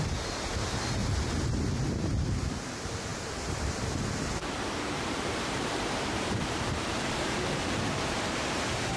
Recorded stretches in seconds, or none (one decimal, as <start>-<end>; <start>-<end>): 1.0-1.9